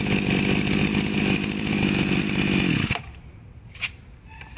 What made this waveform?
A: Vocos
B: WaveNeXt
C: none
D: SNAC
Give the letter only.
C